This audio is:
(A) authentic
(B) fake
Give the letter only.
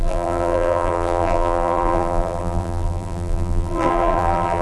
B